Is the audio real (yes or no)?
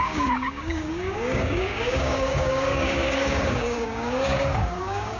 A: no